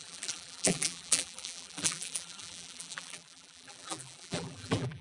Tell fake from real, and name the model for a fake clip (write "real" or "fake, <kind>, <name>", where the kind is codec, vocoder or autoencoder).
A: fake, vocoder, BigVGAN v2